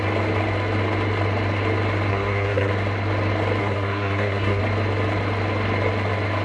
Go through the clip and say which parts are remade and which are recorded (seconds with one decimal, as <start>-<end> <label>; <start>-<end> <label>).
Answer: 0.0-2.1 recorded; 2.1-2.7 remade; 2.7-3.6 recorded; 3.6-4.6 remade; 4.6-6.4 recorded